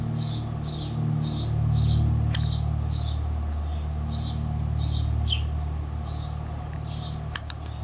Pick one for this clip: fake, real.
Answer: real